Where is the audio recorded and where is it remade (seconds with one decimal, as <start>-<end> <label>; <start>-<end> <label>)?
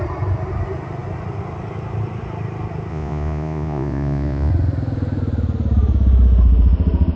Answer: 0.0-2.9 recorded; 2.9-4.5 remade; 4.5-7.2 recorded